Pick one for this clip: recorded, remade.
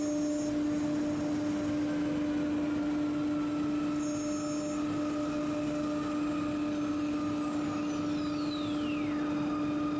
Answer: recorded